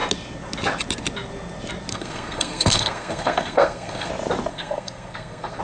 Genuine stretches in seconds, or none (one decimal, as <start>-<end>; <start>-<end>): 0.0-1.9; 4.1-4.5